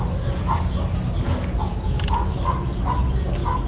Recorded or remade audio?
recorded